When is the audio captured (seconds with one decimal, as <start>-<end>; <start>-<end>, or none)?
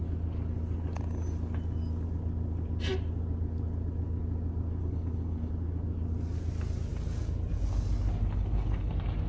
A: 0.0-4.8; 5.5-8.2; 8.9-9.3